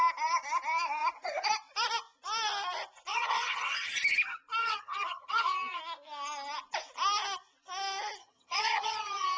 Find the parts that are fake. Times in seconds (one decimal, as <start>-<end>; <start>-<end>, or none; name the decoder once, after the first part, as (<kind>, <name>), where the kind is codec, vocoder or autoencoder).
3.1-3.9 (vocoder, HiFi-GAN); 4.6-5.8; 8.2-9.4